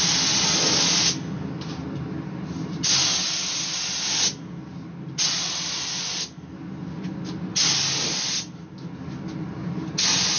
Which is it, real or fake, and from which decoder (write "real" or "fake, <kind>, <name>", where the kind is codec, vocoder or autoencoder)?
real